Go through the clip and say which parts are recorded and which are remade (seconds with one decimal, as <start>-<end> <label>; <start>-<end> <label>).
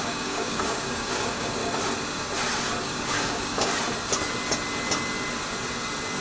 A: 0.0-1.6 remade; 1.6-2.8 recorded; 2.8-3.7 remade; 3.7-6.2 recorded